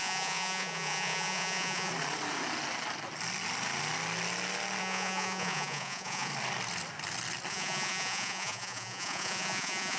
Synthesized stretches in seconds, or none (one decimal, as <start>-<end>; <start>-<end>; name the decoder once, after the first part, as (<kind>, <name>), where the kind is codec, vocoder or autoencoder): 0.0-1.9 (vocoder, Vocos); 4.8-6.3; 7.5-10.0